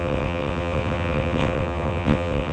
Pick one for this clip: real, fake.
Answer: fake